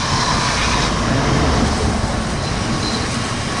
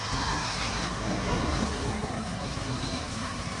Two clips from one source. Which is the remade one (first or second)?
second